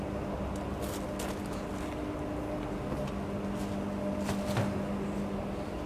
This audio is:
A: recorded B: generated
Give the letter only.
A